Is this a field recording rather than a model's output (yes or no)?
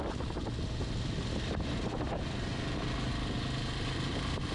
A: yes